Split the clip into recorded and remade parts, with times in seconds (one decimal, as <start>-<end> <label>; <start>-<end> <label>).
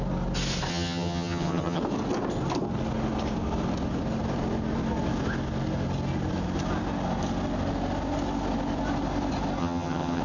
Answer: 0.0-0.7 recorded; 0.7-1.8 remade; 1.8-9.6 recorded; 9.6-10.2 remade